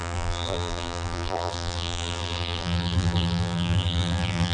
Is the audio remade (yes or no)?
yes